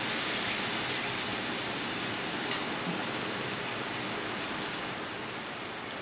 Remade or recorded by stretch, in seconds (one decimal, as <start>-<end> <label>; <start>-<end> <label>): 0.0-6.0 recorded